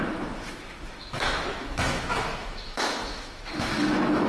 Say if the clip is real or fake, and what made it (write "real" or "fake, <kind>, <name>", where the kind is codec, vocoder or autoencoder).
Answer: fake, autoencoder, DAC-VAE